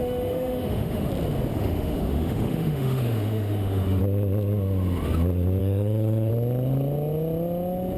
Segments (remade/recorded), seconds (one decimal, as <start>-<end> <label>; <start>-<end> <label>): 0.0-1.1 remade; 1.1-1.5 recorded; 1.5-4.0 remade; 4.0-5.6 recorded; 5.6-6.3 remade; 6.3-8.0 recorded